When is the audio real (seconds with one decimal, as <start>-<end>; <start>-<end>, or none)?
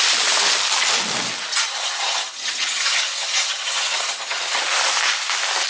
0.0-1.5; 4.6-5.7